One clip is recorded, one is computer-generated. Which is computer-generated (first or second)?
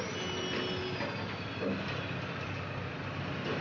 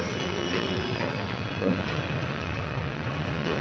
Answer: second